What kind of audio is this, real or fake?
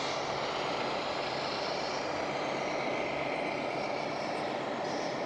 real